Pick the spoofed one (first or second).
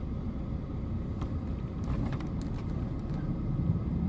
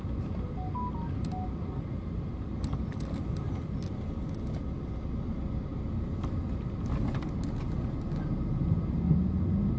first